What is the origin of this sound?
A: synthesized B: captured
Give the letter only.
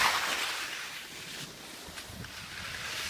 B